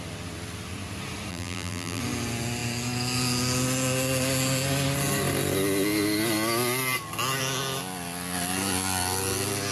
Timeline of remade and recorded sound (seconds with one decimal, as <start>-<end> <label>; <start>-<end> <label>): 0.0-1.3 recorded; 1.3-2.0 remade; 2.0-9.7 recorded